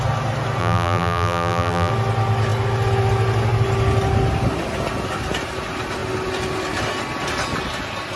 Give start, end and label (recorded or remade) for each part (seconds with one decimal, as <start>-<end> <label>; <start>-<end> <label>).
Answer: 0.0-0.6 recorded; 0.6-1.9 remade; 1.9-8.2 recorded